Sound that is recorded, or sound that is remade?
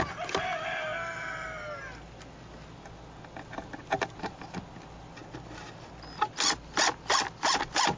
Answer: recorded